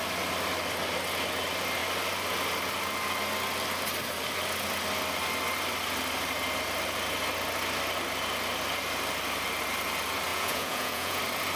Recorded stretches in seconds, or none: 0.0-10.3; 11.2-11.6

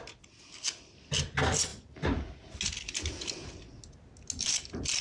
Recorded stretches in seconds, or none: 0.0-5.0

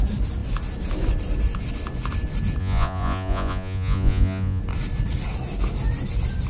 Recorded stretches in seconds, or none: 0.0-2.6; 4.6-6.5